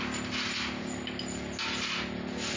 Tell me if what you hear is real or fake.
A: real